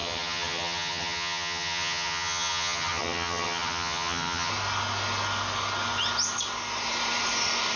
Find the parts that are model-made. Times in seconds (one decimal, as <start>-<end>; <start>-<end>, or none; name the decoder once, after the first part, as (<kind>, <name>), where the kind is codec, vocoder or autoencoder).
0.0-4.5 (vocoder, HiFi-GAN)